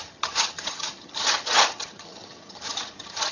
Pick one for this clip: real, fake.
fake